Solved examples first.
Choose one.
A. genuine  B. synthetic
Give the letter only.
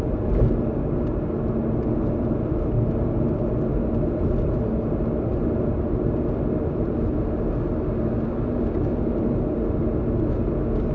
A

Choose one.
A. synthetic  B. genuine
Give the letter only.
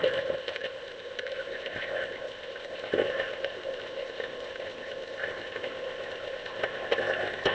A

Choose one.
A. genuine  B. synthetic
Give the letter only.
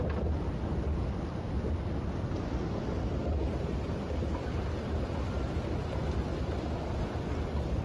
A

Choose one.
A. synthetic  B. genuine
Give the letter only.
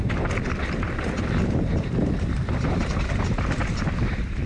A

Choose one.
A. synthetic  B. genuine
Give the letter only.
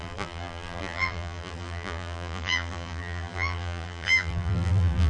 A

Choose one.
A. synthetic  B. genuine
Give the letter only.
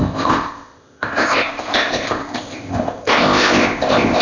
A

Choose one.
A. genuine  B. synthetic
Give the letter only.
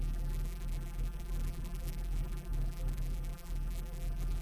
B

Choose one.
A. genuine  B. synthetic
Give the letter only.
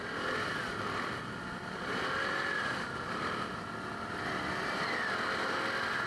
A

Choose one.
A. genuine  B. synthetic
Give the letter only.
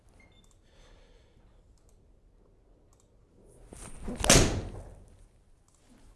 A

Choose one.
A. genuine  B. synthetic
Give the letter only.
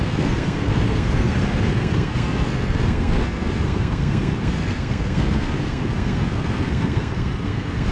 B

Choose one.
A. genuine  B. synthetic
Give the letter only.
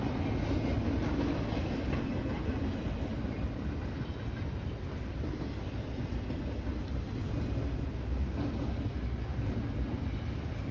A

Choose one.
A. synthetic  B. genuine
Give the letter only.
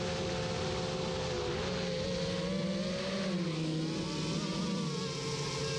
B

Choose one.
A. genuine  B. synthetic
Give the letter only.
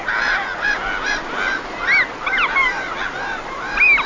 A